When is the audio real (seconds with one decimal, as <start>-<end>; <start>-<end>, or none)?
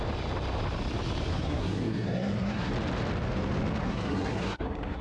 0.0-1.3; 2.7-3.8